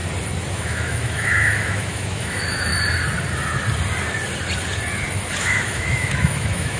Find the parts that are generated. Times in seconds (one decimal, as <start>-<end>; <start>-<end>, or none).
0.5-2.7; 5.4-6.8